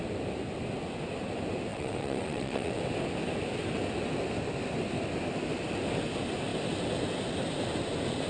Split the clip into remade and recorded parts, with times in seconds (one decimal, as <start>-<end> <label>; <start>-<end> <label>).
0.0-1.7 recorded; 1.7-2.8 remade; 2.8-8.3 recorded